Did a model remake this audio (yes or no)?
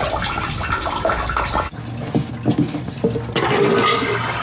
no